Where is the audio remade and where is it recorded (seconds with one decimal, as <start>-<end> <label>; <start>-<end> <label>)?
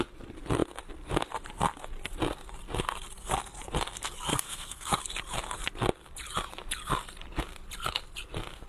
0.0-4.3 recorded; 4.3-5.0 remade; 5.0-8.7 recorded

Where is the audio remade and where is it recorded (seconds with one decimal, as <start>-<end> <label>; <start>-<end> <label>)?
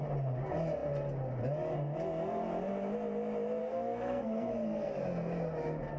0.0-3.6 recorded; 3.6-4.9 remade; 4.9-6.0 recorded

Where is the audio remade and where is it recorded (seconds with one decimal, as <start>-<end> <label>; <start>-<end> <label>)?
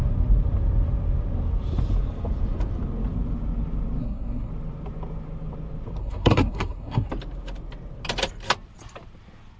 0.0-4.0 recorded; 4.0-4.5 remade; 4.5-6.0 recorded; 6.0-7.1 remade; 7.1-9.6 recorded